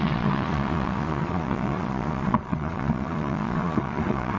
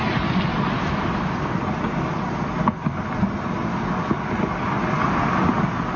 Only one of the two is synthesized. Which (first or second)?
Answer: first